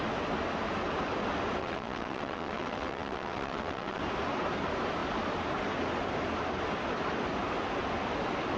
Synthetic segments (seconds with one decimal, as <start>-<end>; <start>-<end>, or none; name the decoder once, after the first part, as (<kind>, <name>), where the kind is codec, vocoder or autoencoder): 1.6-4.0 (vocoder, WaveNeXt)